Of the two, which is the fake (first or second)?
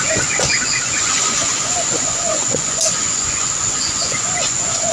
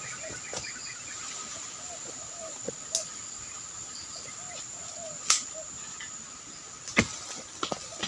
first